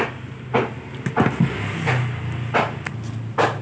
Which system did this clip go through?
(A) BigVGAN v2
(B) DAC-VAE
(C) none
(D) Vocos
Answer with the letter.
C